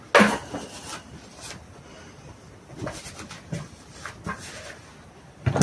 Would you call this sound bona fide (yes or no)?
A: yes